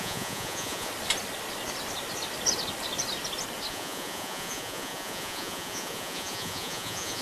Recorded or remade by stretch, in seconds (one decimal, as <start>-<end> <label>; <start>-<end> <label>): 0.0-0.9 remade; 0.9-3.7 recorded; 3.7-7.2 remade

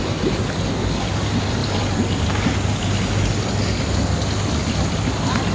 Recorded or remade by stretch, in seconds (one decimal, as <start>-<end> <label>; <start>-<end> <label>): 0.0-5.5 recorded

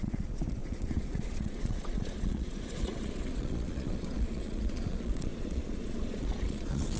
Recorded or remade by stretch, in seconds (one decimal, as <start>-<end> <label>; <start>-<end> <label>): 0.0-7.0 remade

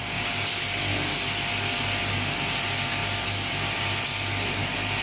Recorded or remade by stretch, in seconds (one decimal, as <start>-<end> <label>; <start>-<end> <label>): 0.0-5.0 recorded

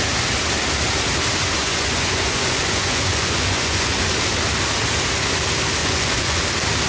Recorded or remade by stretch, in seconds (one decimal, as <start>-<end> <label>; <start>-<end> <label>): 0.0-1.6 recorded; 1.6-4.0 remade; 4.0-5.8 recorded; 5.8-6.4 remade; 6.4-6.9 recorded

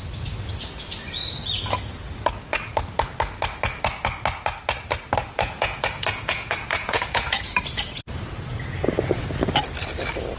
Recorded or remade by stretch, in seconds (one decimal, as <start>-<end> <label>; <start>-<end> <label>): 0.0-5.2 recorded; 5.2-7.5 remade; 7.5-10.4 recorded

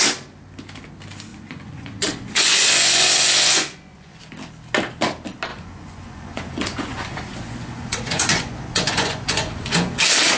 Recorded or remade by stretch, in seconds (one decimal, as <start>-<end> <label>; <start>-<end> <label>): 0.0-1.3 recorded; 1.3-4.2 remade; 4.2-5.5 recorded; 5.5-10.0 remade; 10.0-10.4 recorded